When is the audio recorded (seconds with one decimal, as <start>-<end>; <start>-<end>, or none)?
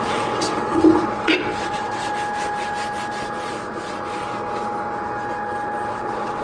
2.1-5.9